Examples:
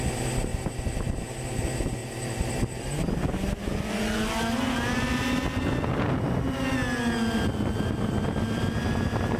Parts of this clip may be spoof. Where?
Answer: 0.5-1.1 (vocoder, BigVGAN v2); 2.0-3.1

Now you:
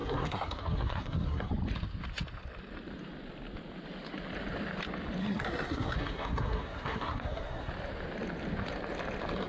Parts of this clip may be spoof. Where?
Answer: 0.0-1.5 (codec, SNAC); 5.2-7.7

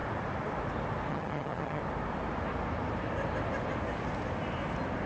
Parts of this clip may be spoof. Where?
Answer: 1.1-1.8 (vocoder, HiFi-GAN)

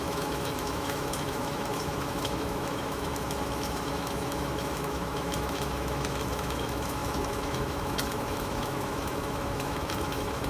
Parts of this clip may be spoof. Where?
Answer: 0.0-10.5 (autoencoder, DAC-VAE)

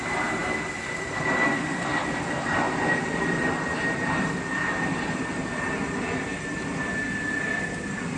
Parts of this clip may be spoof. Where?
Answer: none

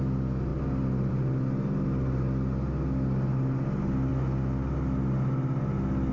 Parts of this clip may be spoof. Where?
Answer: none

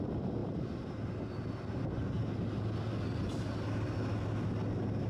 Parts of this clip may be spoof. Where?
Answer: none